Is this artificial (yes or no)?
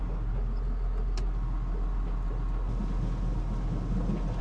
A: no